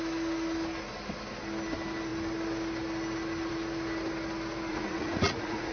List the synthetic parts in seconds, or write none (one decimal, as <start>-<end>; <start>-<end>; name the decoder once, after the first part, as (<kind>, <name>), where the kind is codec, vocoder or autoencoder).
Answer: 4.7-5.7 (vocoder, Vocos)